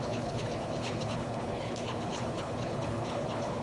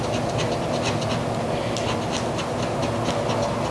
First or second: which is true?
second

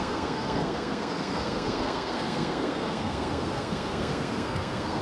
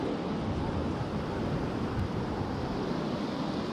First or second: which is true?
second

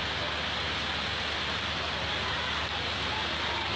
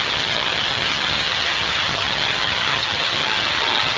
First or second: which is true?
first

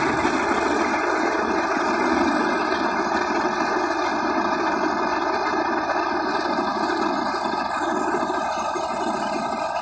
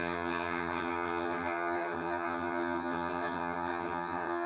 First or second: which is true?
first